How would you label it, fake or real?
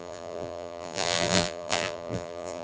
fake